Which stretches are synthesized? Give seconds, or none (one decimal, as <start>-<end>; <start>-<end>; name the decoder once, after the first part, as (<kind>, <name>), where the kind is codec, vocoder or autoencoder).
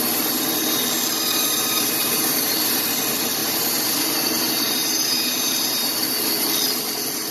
1.1-2.6 (vocoder, BigVGAN v2); 3.4-6.3